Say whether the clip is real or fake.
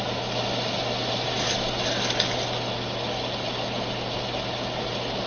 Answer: real